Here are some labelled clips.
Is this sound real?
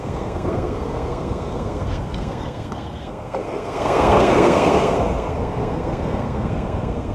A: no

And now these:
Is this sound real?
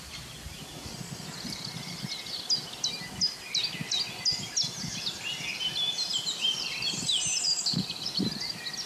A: yes